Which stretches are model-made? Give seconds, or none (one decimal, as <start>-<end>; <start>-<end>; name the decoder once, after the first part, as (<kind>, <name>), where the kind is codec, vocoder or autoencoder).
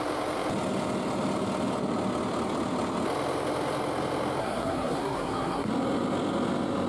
4.4-5.7 (codec, SNAC)